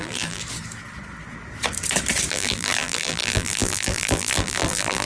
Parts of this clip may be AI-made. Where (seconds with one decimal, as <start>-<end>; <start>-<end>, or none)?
0.0-0.4; 2.3-5.1